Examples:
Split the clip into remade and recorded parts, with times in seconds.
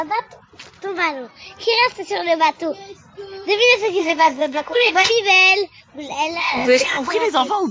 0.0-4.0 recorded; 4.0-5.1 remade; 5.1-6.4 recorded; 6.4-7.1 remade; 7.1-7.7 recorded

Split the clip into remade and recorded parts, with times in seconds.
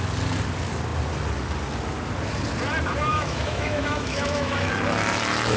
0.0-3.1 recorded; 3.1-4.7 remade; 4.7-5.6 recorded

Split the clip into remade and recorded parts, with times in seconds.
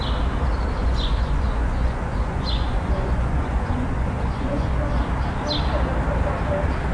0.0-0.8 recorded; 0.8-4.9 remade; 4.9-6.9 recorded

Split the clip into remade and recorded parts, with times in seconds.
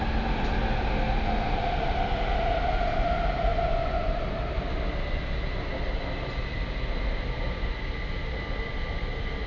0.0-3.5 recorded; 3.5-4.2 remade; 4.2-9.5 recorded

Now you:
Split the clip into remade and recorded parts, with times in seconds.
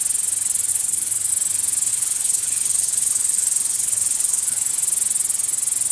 0.0-0.7 recorded; 0.7-1.3 remade; 1.3-1.9 recorded; 1.9-4.7 remade; 4.7-5.9 recorded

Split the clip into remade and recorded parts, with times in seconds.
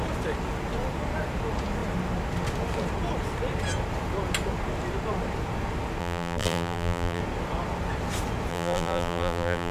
0.0-6.0 recorded; 6.0-7.2 remade; 7.2-8.5 recorded; 8.5-9.7 remade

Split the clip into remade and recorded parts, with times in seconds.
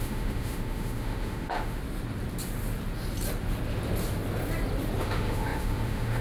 0.0-1.8 remade; 1.8-5.0 recorded; 5.0-6.2 remade